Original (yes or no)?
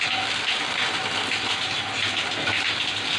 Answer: yes